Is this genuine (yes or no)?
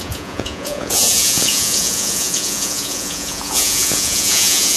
no